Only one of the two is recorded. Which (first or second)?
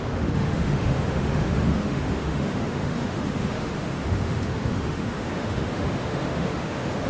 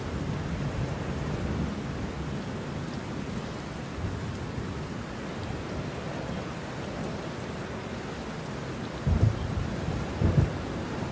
second